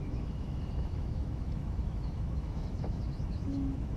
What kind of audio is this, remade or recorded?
remade